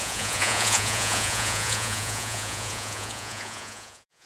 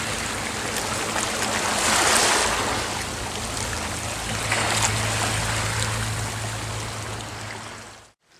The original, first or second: second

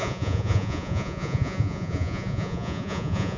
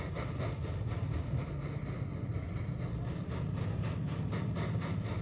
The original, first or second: second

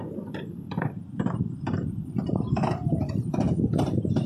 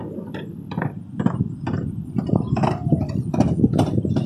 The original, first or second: second